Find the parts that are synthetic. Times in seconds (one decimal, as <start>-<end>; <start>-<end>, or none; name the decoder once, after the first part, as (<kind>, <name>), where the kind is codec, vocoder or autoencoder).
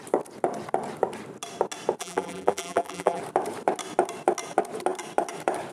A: 2.0-3.2 (vocoder, BigVGAN v2)